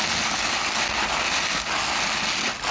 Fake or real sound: real